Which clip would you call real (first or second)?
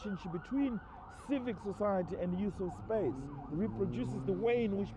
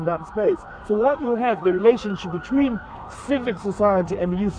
first